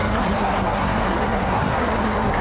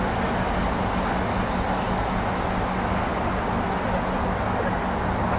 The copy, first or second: first